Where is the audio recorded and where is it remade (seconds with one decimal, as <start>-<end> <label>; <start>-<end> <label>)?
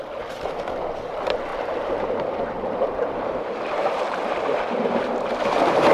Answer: 0.0-1.5 recorded; 1.5-5.0 remade; 5.0-5.9 recorded